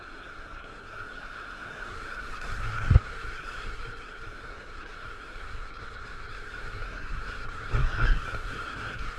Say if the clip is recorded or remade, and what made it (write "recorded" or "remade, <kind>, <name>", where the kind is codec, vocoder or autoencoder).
remade, codec, SNAC